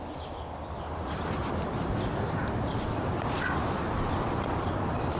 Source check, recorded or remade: recorded